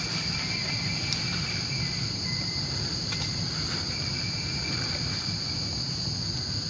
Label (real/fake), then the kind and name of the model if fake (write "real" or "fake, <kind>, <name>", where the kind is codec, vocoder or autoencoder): real